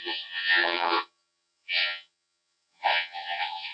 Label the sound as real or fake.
fake